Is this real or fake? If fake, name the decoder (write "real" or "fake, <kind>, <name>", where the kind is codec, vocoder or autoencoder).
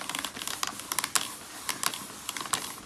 real